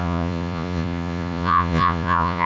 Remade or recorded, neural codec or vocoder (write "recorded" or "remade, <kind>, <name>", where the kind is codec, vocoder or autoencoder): remade, vocoder, Vocos